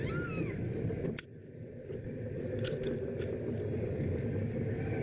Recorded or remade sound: recorded